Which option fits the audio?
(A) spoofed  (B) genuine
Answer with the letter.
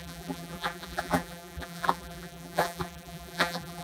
A